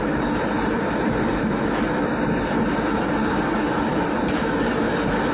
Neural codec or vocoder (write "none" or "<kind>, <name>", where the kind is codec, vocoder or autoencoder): none